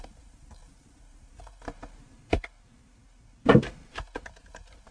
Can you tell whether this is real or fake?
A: fake